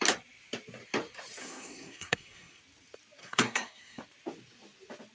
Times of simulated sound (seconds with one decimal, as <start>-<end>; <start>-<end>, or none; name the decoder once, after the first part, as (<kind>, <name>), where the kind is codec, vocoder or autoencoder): 1.4-2.6 (codec, SNAC); 3.2-4.0